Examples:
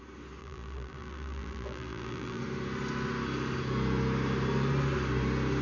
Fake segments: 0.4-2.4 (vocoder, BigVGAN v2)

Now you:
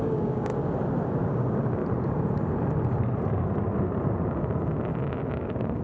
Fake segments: 0.0-0.5 (codec, DAC); 1.3-1.8; 5.3-5.8

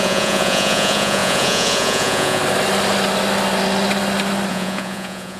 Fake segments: 0.0-2.4 (vocoder, Vocos); 4.5-5.4

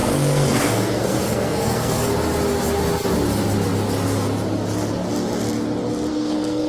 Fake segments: 0.0-2.1 (codec, SNAC); 6.1-6.7

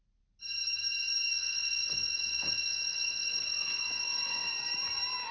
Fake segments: 1.3-4.5 (vocoder, WaveNeXt)

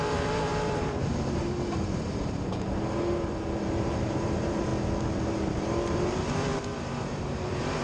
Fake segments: 0.0-4.7 (vocoder, BigVGAN v2); 5.2-7.8

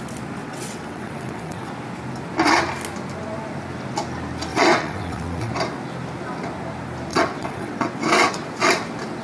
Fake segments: 0.4-1.7 (vocoder, WaveNeXt); 4.5-5.5; 7.1-8.5

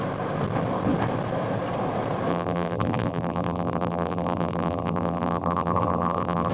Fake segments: 2.3-6.5 (vocoder, BigVGAN v2)